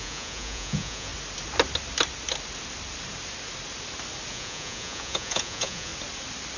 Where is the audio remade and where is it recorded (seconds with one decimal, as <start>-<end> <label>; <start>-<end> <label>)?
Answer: 0.0-1.1 remade; 1.1-4.3 recorded; 4.3-5.9 remade; 5.9-6.6 recorded